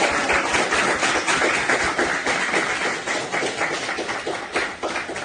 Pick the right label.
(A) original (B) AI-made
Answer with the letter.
A